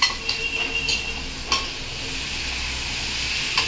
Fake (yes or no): no